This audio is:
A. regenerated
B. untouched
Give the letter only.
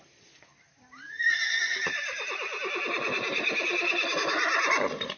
B